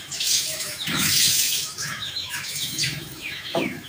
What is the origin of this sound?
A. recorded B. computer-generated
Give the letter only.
B